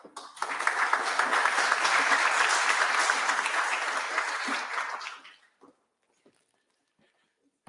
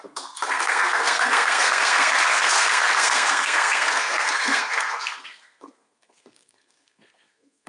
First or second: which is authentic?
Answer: first